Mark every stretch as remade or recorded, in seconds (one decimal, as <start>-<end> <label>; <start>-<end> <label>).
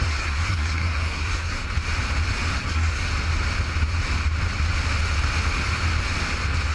0.0-1.6 remade; 1.6-2.6 recorded; 2.6-3.1 remade; 3.1-6.7 recorded